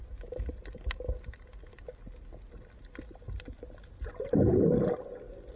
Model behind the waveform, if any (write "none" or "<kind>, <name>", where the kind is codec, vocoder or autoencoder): none